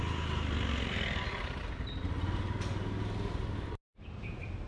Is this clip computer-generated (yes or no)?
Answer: no